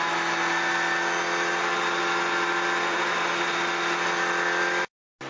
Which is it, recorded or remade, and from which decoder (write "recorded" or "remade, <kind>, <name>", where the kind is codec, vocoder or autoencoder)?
recorded